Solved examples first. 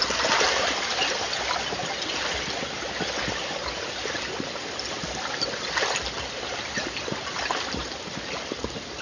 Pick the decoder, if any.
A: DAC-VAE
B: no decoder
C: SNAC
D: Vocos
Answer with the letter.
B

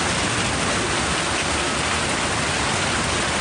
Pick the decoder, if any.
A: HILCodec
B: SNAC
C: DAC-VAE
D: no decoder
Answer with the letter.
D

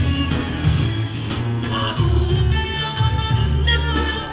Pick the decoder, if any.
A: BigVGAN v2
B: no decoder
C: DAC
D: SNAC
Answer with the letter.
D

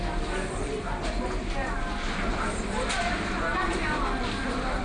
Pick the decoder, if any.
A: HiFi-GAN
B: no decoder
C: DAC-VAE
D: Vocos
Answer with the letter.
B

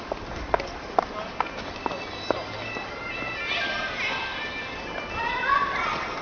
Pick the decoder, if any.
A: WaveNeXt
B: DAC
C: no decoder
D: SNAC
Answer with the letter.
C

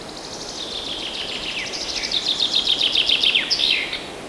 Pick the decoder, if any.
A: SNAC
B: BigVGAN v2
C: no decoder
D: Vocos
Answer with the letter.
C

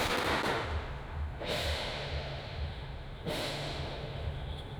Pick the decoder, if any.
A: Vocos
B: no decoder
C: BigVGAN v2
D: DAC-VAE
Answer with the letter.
D